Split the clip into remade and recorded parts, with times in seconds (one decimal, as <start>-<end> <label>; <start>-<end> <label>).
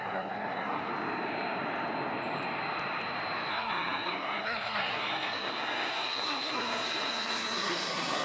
0.0-0.9 remade; 0.9-3.5 recorded; 3.5-8.2 remade